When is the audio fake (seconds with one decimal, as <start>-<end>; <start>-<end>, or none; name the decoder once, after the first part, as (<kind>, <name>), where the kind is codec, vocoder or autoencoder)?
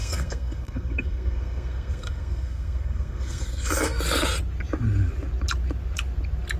0.0-4.0 (codec, SNAC)